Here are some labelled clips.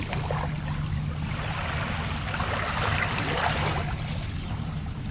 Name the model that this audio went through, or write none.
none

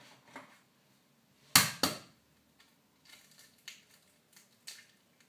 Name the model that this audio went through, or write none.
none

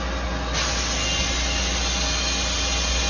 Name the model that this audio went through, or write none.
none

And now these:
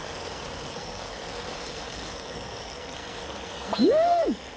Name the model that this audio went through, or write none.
codec, SNAC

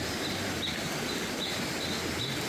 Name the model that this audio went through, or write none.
none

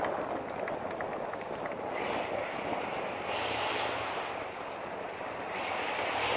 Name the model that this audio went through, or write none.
none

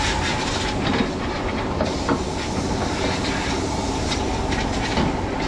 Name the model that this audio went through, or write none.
none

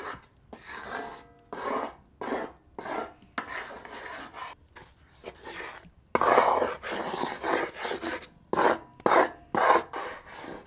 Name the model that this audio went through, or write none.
none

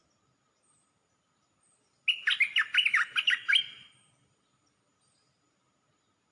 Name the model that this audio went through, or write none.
none